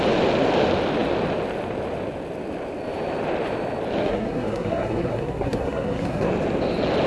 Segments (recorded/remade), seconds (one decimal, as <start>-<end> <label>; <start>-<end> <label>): 0.0-4.0 recorded; 4.0-6.3 remade; 6.3-7.1 recorded